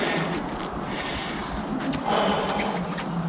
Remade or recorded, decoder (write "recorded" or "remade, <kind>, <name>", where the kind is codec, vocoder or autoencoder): recorded